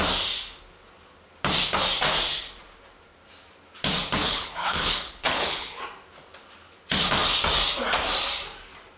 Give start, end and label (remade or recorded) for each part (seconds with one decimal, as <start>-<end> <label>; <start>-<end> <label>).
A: 0.0-4.2 recorded; 4.2-5.8 remade; 5.8-9.0 recorded